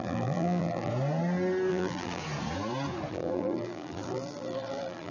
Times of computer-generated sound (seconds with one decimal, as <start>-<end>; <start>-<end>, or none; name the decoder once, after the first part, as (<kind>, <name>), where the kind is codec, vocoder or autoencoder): 0.0-0.9 (vocoder, BigVGAN v2); 1.7-2.2; 3.1-5.1